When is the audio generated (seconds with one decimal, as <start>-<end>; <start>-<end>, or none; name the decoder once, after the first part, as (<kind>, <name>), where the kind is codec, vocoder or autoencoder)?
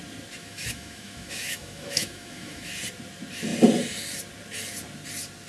0.4-2.7 (autoencoder, DAC-VAE)